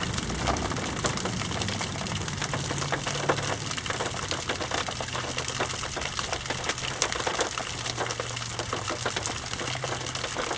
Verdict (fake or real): real